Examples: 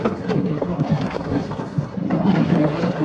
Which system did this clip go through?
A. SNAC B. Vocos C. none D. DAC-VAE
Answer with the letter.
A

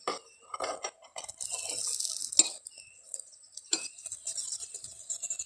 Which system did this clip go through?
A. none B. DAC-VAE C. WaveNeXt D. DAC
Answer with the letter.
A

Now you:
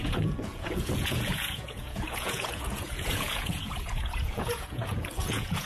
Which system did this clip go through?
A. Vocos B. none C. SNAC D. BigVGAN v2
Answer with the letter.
A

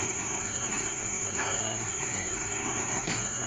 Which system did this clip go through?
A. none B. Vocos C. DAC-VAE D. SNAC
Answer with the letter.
D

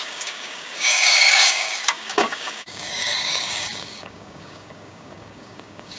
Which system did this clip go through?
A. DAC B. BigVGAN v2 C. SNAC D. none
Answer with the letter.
A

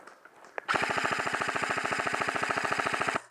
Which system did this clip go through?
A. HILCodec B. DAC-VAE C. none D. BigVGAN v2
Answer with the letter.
C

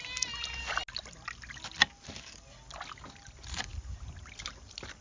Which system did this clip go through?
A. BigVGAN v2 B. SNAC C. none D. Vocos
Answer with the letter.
C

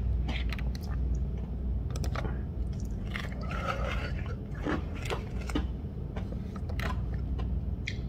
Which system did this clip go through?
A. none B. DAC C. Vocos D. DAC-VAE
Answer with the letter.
A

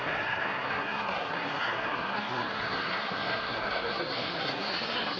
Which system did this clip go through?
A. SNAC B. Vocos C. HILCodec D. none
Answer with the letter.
A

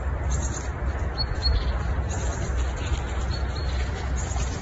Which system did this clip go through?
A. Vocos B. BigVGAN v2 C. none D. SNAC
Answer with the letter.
C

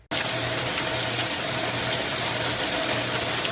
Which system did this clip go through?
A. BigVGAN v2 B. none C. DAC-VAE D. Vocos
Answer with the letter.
B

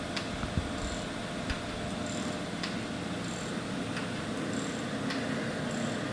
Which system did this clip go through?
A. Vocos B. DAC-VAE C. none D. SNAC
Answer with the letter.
C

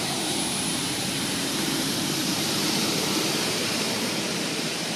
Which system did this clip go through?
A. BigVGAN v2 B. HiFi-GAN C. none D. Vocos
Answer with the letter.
A